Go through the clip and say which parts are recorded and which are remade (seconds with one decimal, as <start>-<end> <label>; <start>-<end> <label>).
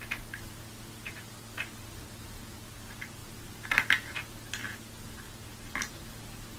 0.0-6.6 recorded